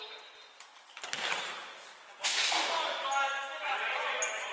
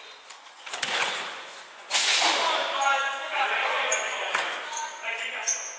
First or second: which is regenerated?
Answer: second